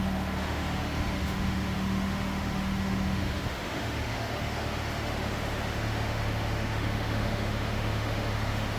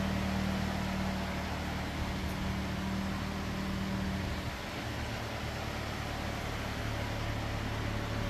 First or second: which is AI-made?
first